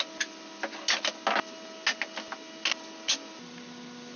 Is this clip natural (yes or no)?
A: yes